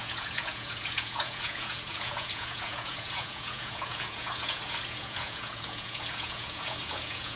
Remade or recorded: remade